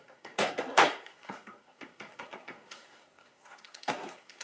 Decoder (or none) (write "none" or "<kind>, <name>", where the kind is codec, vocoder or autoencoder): codec, SNAC